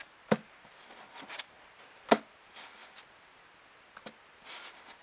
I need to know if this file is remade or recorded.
recorded